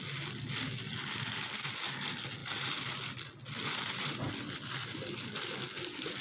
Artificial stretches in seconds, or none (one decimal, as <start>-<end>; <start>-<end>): none